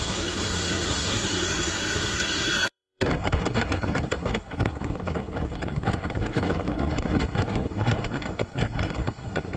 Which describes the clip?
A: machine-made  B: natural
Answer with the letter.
A